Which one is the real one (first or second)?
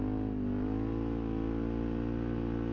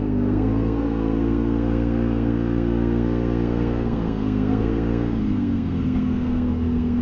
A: first